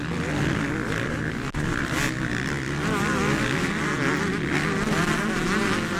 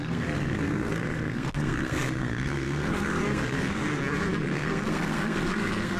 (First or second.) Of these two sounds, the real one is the first